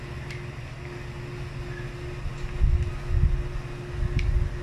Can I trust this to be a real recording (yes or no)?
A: yes